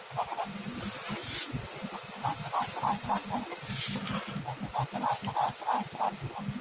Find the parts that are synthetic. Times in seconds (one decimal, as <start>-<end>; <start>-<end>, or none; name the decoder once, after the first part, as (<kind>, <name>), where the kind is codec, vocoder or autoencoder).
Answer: none